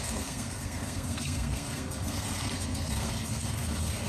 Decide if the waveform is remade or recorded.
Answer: remade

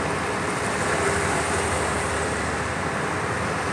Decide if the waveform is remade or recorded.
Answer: remade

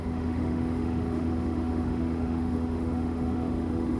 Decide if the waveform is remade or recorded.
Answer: remade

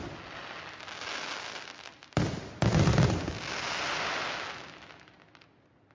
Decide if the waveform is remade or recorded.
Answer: recorded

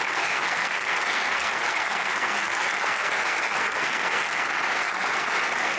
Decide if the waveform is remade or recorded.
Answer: remade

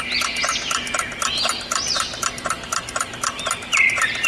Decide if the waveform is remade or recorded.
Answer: recorded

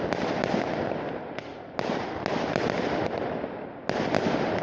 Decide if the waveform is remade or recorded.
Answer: recorded